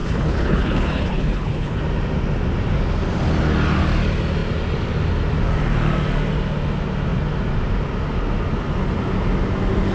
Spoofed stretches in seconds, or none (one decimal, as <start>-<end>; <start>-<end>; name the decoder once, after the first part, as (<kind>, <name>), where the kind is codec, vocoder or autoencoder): 0.0-1.8 (codec, HILCodec)